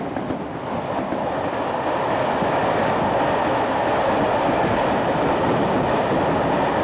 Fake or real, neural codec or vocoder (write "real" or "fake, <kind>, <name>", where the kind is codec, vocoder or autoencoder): real